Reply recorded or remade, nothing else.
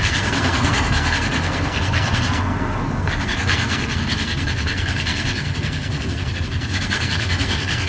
remade